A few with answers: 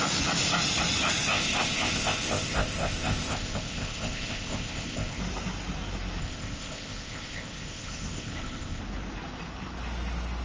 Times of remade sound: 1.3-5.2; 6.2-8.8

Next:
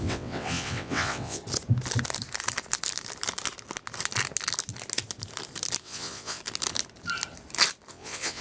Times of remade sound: 0.0-1.4; 5.8-6.4; 7.9-8.4

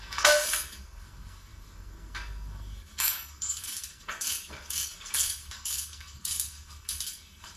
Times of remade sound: 0.0-7.6

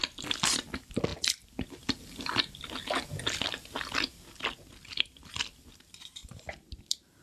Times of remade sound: 6.2-6.8